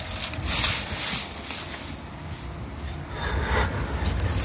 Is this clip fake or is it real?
real